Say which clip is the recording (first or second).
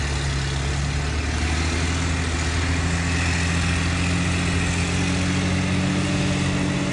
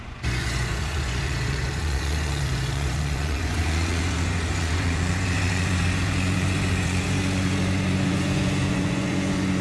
first